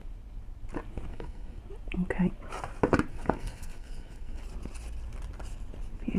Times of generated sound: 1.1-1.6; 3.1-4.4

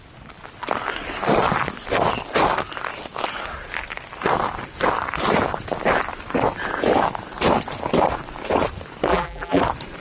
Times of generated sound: 9.1-9.6